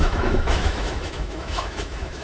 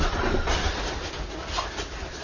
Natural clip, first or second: second